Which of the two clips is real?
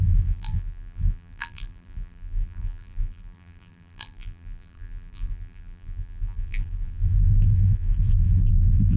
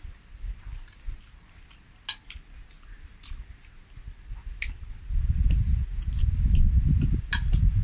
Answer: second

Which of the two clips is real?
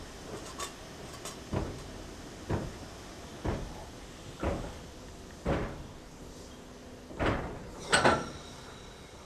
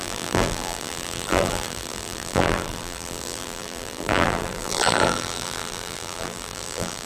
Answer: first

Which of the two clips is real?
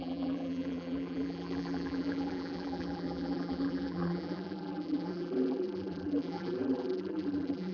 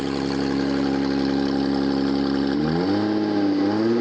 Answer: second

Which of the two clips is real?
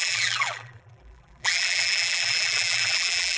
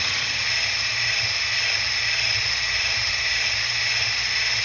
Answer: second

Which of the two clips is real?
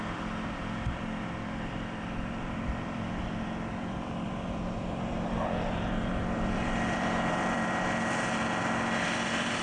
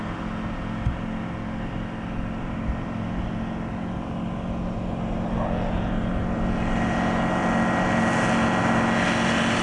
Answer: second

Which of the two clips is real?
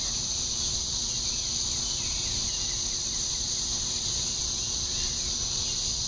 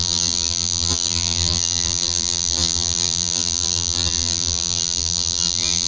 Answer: first